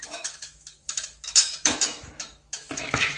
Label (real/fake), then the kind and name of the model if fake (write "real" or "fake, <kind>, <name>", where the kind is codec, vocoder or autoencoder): fake, autoencoder, DAC-VAE